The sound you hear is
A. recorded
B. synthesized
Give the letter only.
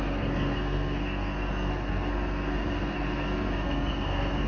B